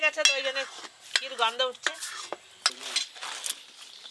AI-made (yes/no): no